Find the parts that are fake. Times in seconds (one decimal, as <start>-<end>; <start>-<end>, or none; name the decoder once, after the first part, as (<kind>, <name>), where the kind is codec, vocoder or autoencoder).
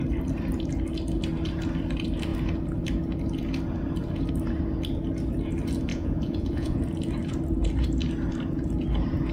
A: 5.9-6.8 (vocoder, Vocos)